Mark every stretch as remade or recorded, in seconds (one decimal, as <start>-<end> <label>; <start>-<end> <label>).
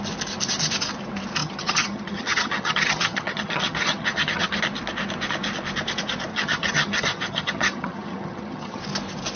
0.0-1.4 recorded; 1.4-4.6 remade; 4.6-6.3 recorded; 6.3-8.8 remade; 8.8-9.4 recorded